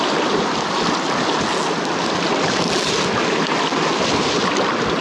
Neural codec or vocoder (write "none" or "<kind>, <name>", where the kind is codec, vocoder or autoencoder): none